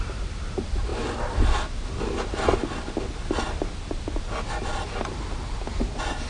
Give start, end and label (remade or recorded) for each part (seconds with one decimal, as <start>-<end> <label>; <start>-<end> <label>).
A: 0.0-6.3 recorded